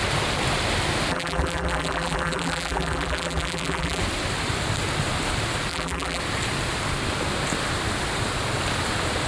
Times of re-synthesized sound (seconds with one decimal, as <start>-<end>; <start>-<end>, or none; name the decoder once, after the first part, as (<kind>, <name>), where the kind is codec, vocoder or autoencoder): 1.1-4.0 (vocoder, BigVGAN v2); 5.7-6.2